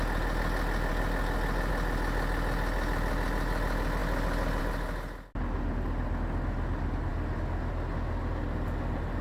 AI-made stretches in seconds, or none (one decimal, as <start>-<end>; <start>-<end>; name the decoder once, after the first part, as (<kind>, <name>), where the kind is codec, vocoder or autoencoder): none